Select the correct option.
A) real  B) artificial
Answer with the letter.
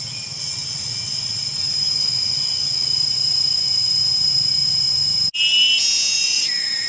A